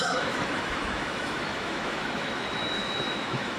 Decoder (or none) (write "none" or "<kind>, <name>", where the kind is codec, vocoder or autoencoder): autoencoder, DAC-VAE